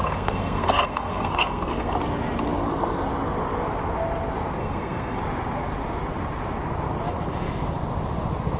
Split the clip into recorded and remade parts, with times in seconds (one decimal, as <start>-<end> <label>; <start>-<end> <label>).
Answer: 0.0-1.9 remade; 1.9-4.6 recorded; 4.6-5.2 remade; 5.2-8.6 recorded